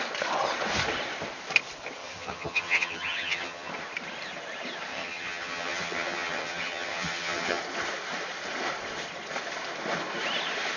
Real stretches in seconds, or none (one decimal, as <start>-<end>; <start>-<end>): 0.0-2.0; 3.7-4.9; 7.6-10.8